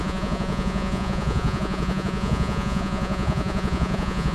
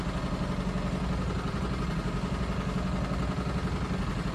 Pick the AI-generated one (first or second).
first